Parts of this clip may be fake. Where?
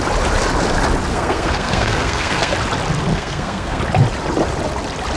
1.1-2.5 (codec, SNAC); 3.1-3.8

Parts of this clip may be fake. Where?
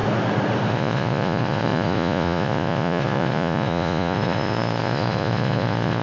0.7-6.0 (vocoder, Vocos)